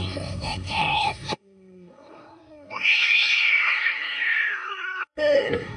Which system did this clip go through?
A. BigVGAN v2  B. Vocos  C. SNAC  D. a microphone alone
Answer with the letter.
C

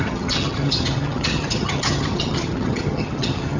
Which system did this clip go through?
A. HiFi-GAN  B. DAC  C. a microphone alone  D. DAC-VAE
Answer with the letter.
A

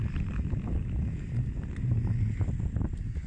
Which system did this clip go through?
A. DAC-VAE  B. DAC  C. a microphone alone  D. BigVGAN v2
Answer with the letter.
C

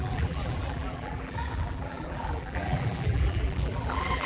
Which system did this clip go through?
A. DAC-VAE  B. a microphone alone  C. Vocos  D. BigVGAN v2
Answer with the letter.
D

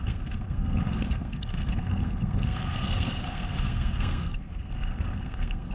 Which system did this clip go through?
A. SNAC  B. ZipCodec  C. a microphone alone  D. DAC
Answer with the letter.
A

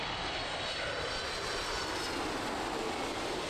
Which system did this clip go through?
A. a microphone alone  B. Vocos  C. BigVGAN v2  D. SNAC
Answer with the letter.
A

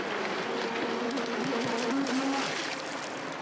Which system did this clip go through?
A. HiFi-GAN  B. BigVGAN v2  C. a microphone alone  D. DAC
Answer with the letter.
C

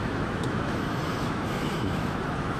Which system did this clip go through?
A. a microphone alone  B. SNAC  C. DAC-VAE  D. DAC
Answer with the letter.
C